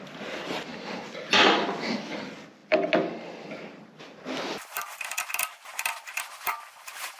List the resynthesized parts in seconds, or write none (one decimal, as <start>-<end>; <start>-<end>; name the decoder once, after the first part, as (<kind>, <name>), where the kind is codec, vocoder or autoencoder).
none